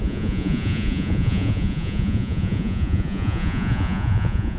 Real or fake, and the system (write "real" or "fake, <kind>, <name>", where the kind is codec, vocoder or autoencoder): fake, vocoder, Vocos